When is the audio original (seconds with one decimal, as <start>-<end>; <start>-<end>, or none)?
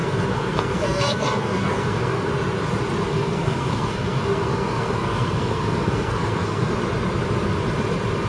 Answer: 2.3-3.1; 6.7-8.3